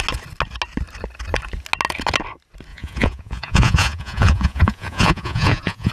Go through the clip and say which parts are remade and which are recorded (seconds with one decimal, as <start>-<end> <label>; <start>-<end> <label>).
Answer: 0.0-2.7 recorded; 2.7-5.9 remade